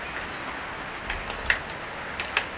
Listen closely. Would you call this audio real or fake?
real